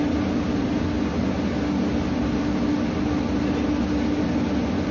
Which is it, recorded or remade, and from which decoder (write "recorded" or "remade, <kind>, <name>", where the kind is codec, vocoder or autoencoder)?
recorded